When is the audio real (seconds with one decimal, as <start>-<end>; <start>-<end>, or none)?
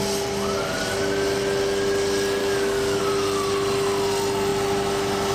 0.0-2.4; 3.0-5.3